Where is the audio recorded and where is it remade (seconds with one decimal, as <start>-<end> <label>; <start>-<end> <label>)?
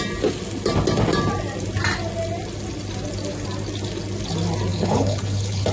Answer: 0.0-4.7 recorded; 4.7-5.7 remade